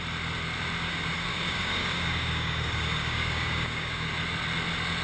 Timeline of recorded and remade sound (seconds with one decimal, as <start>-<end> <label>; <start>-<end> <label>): 0.0-1.3 recorded; 1.3-4.1 remade; 4.1-5.0 recorded